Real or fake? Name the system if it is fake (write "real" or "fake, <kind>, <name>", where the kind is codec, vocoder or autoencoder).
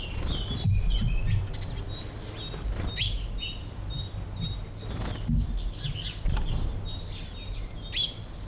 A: real